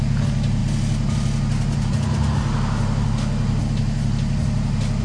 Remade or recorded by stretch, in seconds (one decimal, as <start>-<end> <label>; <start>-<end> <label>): 0.0-5.0 recorded